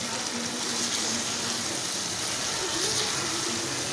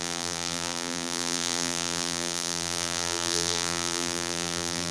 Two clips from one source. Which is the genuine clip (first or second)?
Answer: first